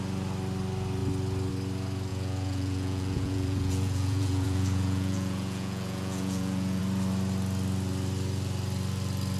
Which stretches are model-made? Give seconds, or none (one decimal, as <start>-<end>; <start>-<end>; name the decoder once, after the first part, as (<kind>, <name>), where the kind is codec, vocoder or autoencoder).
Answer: 2.1-6.8 (vocoder, Vocos)